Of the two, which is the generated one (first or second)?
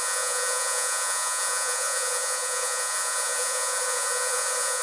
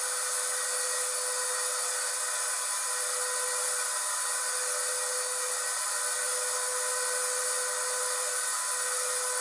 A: first